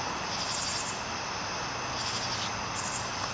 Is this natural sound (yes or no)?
yes